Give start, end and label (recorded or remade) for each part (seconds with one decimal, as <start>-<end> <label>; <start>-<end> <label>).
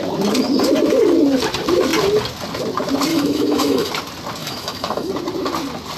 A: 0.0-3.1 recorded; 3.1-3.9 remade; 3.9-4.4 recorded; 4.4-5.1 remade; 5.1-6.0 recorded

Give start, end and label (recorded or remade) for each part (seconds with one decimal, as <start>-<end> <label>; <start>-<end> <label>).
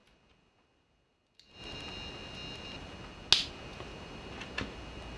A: 0.0-5.2 recorded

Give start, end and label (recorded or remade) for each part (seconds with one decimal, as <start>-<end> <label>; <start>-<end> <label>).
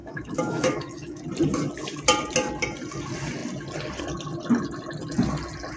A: 0.0-1.2 remade; 1.2-5.8 recorded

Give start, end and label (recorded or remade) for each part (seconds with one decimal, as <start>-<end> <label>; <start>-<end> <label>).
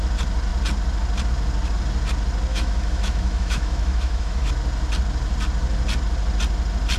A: 0.0-2.5 recorded; 2.5-4.5 remade; 4.5-7.0 recorded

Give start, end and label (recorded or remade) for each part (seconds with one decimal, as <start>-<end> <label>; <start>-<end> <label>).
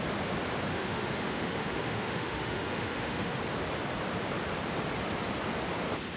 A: 0.0-0.7 recorded; 0.7-3.4 remade; 3.4-6.2 recorded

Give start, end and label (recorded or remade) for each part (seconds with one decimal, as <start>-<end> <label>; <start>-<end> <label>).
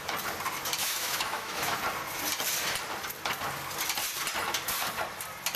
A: 0.0-0.8 recorded; 0.8-1.8 remade; 1.8-5.6 recorded